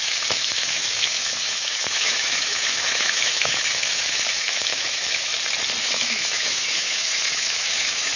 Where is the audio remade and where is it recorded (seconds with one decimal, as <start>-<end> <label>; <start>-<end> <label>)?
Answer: 0.0-5.3 remade; 5.3-5.8 recorded; 5.8-8.2 remade